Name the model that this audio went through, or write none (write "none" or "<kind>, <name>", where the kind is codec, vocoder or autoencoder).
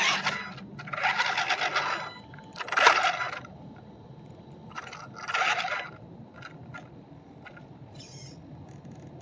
none